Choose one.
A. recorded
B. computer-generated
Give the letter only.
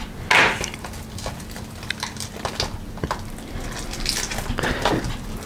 A